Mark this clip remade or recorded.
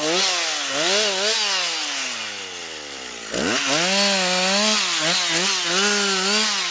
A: recorded